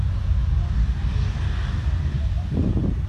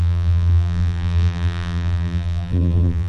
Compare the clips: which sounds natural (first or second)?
first